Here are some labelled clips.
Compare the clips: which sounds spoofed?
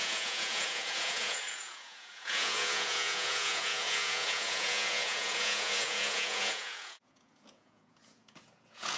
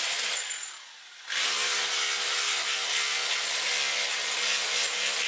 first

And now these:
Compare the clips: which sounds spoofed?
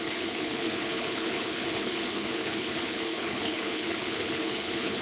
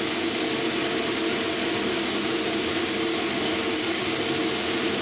first